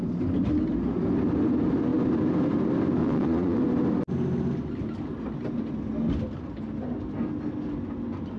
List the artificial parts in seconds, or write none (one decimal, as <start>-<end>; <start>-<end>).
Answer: 3.0-3.6